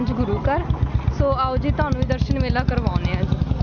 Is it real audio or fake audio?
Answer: real